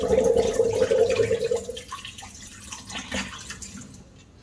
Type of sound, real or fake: real